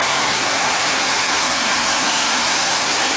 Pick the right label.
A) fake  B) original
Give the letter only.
A